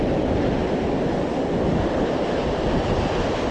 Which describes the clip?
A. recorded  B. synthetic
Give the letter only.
A